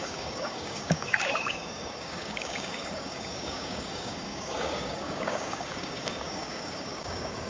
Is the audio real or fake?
fake